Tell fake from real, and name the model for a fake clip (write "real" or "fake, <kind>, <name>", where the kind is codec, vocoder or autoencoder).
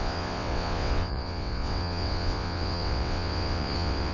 fake, vocoder, WaveNeXt